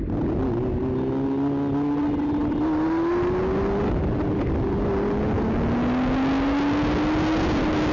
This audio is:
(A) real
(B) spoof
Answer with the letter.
A